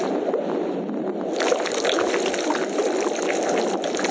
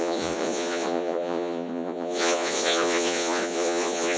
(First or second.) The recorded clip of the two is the first